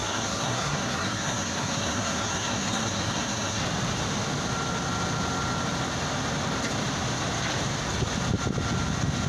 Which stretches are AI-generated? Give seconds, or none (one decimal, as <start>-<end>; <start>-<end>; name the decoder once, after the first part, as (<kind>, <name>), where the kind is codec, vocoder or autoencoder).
0.0-3.6 (codec, SNAC)